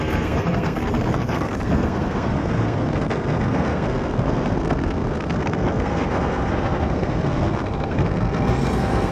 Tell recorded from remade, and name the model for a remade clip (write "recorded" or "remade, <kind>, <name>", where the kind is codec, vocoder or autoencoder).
remade, codec, SNAC